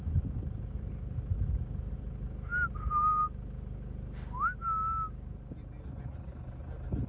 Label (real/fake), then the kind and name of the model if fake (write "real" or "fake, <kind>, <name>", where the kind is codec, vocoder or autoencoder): real